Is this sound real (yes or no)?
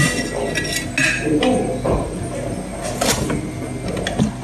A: yes